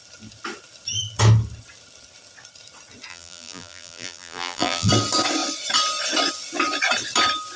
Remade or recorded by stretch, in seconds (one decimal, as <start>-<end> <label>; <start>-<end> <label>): 0.0-3.1 recorded; 3.1-4.9 remade; 4.9-7.6 recorded